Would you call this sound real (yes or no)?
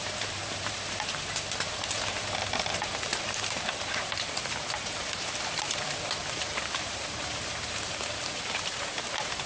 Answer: no